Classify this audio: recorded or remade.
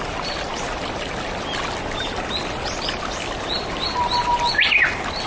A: recorded